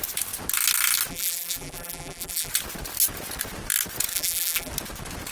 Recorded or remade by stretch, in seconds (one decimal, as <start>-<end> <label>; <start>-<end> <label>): 0.0-1.1 recorded; 1.1-2.5 remade; 2.5-4.1 recorded; 4.1-4.7 remade; 4.7-5.3 recorded